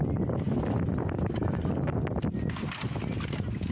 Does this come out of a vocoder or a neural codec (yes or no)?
no